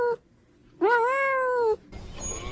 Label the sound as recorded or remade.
recorded